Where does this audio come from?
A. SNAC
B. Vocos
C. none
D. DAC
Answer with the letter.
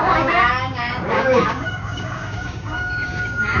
D